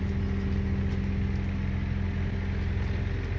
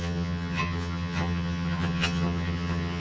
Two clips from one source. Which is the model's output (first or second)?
second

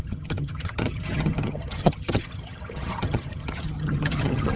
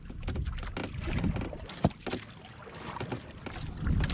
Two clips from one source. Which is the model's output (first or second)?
first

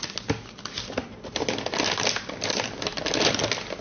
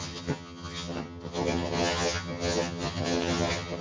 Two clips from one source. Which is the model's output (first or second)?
second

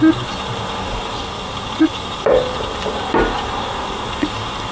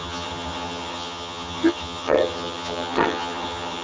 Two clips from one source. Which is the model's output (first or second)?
second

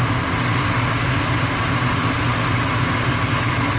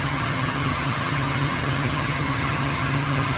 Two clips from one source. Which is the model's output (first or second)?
second